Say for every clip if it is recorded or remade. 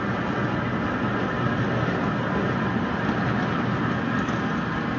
recorded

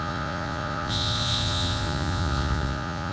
remade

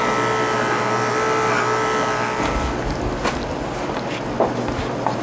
recorded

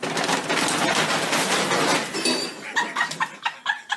recorded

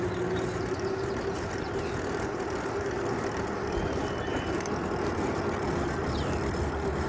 recorded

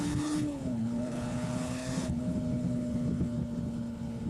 remade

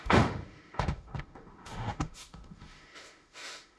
remade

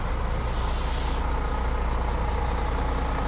recorded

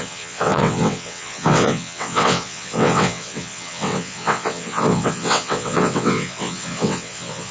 remade